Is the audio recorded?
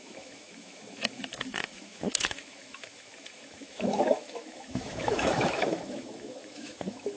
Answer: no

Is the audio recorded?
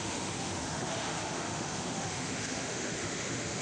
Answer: no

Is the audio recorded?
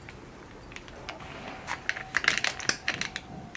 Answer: yes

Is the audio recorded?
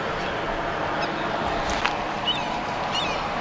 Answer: yes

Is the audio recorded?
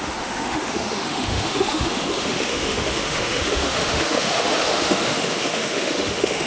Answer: no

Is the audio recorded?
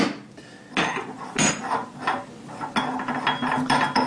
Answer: yes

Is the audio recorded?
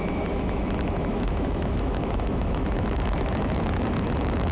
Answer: no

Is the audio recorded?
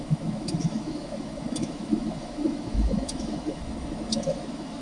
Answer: no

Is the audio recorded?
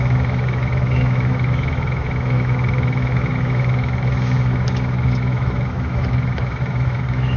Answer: no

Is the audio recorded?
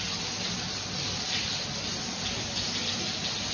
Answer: yes